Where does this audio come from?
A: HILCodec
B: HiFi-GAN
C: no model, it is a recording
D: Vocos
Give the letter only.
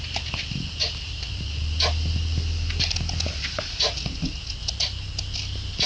C